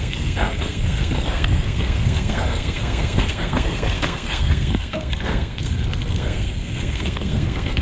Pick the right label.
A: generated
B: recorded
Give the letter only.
A